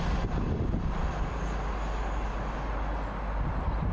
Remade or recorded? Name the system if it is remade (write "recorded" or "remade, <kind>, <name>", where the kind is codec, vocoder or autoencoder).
recorded